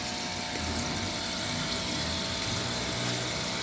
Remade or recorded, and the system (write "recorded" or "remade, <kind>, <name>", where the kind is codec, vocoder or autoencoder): recorded